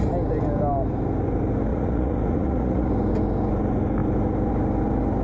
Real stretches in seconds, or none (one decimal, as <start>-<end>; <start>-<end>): 0.0-1.7; 2.9-5.2